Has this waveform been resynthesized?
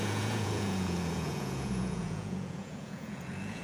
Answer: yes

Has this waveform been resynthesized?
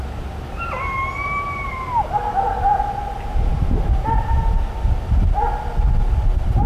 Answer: no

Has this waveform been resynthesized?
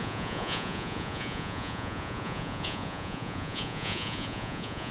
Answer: yes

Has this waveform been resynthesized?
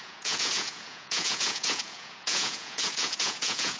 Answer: yes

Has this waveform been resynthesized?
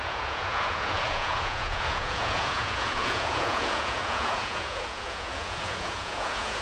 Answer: yes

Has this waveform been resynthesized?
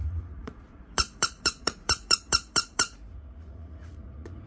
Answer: yes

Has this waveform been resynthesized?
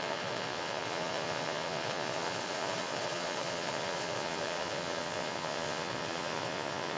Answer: yes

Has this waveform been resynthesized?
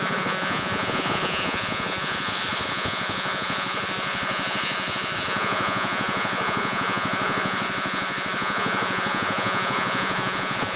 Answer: yes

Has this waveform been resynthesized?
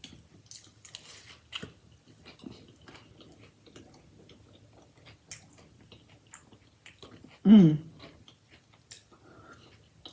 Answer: no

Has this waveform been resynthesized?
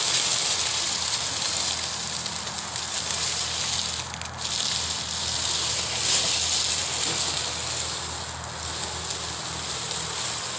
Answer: no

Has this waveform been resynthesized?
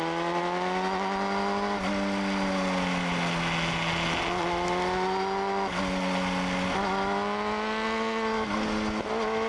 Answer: no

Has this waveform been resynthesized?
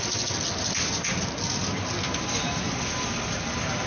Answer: no